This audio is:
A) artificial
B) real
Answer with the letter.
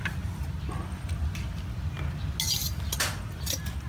B